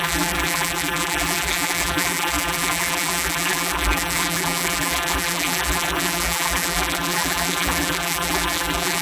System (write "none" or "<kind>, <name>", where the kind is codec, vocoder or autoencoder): vocoder, BigVGAN v2